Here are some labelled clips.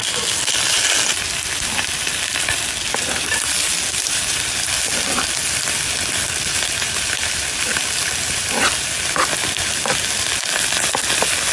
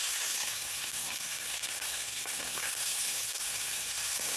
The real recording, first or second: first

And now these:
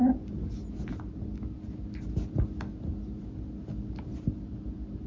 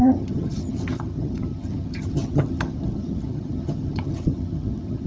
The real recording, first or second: first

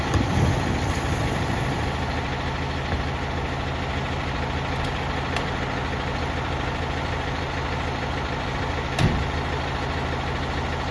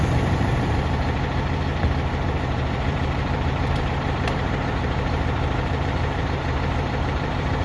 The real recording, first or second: first